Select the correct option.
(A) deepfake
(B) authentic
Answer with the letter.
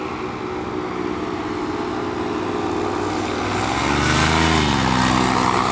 B